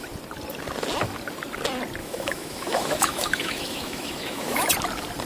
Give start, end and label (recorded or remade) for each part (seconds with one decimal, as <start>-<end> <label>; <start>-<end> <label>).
0.0-2.0 recorded; 2.0-4.7 remade; 4.7-5.3 recorded